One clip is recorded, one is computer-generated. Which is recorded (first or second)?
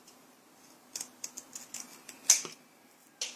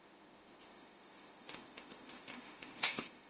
first